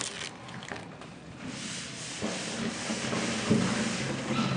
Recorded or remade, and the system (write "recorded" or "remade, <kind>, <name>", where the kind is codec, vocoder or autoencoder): recorded